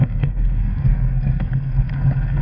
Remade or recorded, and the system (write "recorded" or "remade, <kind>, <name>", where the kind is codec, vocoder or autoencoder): remade, codec, SNAC